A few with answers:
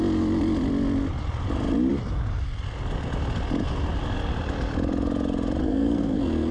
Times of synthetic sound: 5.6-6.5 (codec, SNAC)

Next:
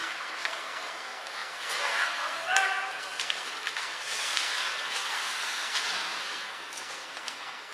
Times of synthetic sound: 0.0-7.7 (codec, SNAC)

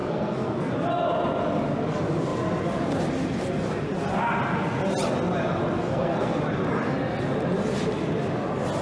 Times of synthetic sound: 0.0-0.7 (codec, SNAC); 5.8-6.4

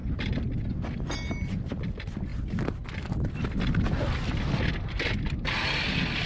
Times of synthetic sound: none

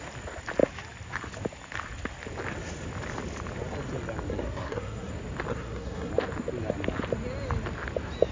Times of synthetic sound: 4.3-5.1 (codec, SNAC); 5.5-6.1

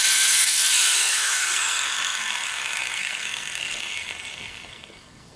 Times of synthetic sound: 0.0-5.4 (codec, SNAC)

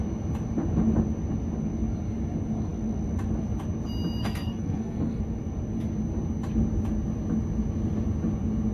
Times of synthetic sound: 4.2-5.2 (codec, SNAC)